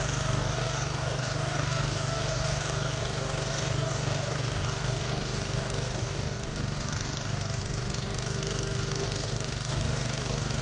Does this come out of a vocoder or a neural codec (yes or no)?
yes